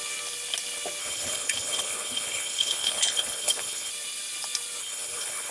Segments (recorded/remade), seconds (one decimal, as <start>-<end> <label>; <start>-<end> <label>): 0.0-1.0 recorded; 1.0-3.9 remade; 3.9-4.8 recorded; 4.8-5.5 remade